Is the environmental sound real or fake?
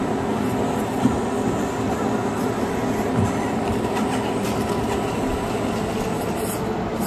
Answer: real